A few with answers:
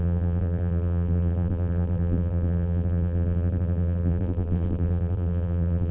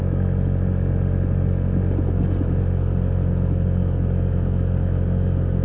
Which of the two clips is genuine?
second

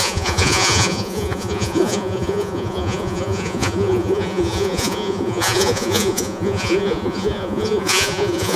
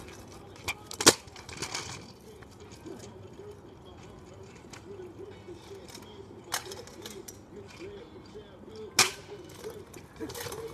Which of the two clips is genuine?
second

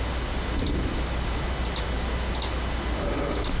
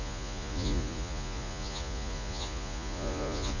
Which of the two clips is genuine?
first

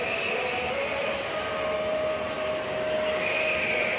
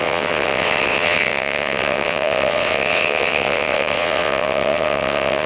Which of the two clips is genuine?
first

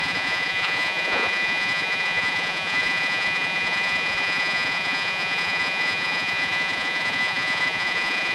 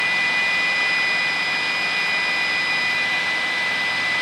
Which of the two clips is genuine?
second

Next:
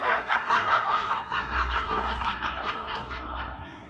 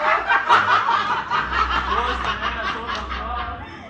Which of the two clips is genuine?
second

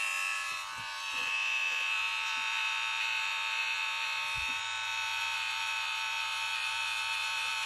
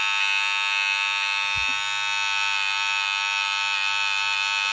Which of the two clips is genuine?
second